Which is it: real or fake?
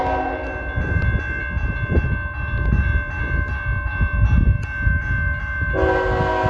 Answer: real